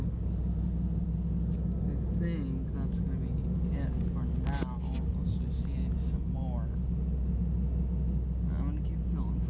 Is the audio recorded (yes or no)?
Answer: yes